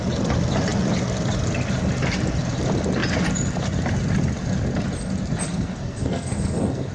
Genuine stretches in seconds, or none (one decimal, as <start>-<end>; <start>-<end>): 0.0-5.5